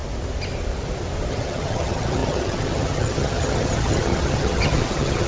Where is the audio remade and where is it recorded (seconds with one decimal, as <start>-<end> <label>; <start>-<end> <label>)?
0.0-1.3 recorded; 1.3-5.3 remade